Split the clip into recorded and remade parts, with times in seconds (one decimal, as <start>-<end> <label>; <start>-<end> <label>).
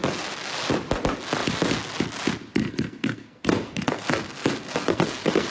0.0-2.6 recorded; 2.6-5.5 remade